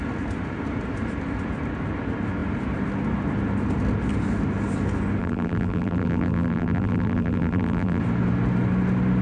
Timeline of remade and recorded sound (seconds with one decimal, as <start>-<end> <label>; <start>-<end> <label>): 0.0-5.2 recorded; 5.2-8.0 remade; 8.0-9.2 recorded